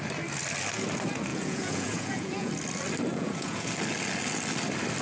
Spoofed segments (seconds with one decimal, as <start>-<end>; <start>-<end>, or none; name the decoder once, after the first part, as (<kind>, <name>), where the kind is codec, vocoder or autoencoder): 1.3-2.5 (vocoder, Vocos); 3.1-3.7